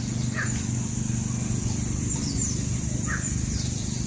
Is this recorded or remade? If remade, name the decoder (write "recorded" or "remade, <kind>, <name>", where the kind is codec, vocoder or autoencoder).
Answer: recorded